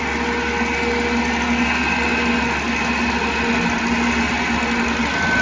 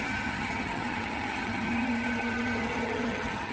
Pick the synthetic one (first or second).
second